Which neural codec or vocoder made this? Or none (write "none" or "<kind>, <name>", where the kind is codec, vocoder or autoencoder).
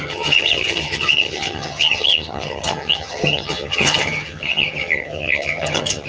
vocoder, HiFi-GAN